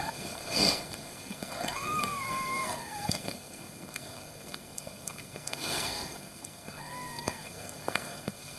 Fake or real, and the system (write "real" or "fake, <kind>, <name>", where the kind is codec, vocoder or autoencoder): fake, codec, SNAC